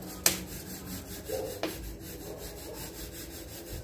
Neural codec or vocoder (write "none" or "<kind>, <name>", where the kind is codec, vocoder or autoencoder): none